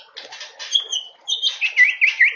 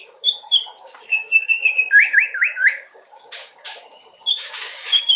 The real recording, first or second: first